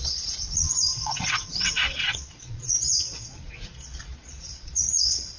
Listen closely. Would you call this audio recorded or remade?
remade